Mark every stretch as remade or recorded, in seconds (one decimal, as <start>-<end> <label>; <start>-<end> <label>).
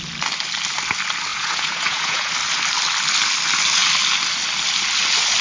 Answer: 0.0-1.3 recorded; 1.3-2.3 remade; 2.3-5.4 recorded